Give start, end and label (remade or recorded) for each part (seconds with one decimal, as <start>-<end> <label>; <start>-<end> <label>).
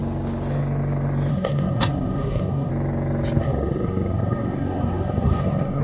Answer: 0.0-1.3 recorded; 1.3-2.7 remade; 2.7-3.4 recorded; 3.4-5.8 remade